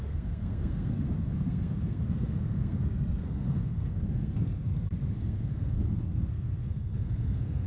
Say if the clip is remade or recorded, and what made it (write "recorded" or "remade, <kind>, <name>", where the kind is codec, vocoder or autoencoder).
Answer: remade, codec, SNAC